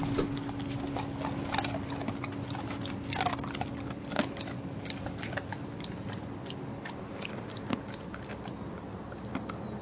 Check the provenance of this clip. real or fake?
real